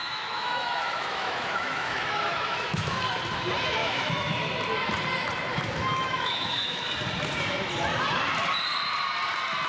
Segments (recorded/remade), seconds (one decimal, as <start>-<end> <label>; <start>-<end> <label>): 0.0-3.0 remade; 3.0-3.8 recorded; 3.8-4.4 remade; 4.4-5.5 recorded; 5.5-6.9 remade; 6.9-9.7 recorded